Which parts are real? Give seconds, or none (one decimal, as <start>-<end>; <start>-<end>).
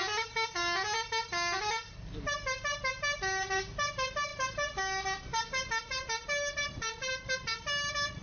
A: 0.0-8.2